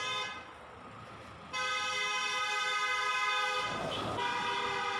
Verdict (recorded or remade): recorded